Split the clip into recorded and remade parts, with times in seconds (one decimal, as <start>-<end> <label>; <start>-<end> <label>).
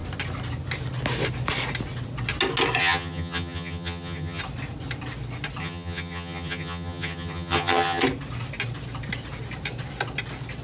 0.0-2.8 recorded; 2.8-4.4 remade; 4.4-5.6 recorded; 5.6-8.0 remade; 8.0-10.6 recorded